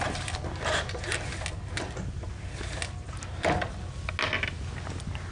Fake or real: real